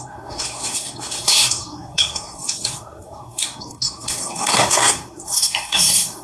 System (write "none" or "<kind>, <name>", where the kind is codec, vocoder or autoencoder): codec, SNAC